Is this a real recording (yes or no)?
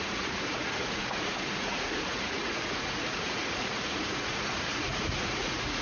no